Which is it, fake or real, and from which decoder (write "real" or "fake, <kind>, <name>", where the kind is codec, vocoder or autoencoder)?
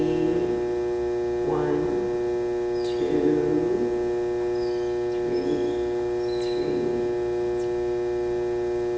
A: real